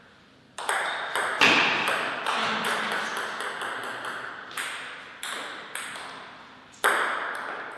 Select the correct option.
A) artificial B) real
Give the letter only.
B